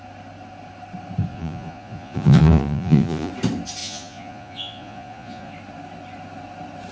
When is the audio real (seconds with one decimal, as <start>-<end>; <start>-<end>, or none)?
0.0-1.3; 3.3-3.8; 5.5-6.9